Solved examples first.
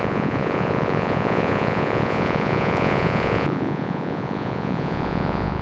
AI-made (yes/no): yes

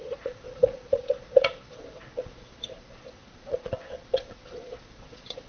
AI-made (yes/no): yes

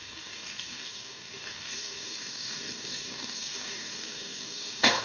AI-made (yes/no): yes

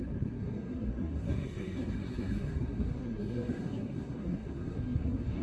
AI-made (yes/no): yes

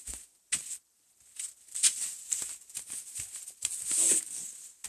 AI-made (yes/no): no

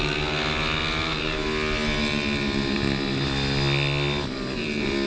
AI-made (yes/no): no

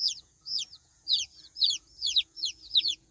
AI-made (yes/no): yes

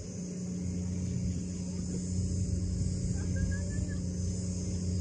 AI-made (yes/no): no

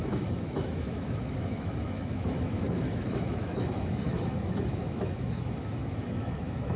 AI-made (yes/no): yes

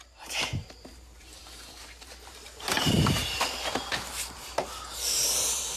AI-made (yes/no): yes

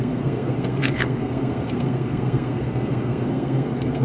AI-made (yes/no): yes